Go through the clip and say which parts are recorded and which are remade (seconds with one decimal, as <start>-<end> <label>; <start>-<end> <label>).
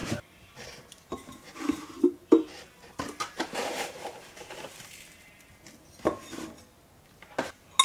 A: 0.0-1.0 remade; 1.0-2.5 recorded; 2.5-6.6 remade; 6.6-7.8 recorded